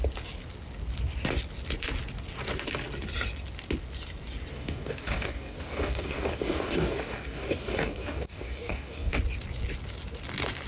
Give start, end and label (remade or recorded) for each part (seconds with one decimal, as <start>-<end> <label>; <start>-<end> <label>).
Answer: 0.0-4.5 recorded; 4.5-9.2 remade; 9.2-10.7 recorded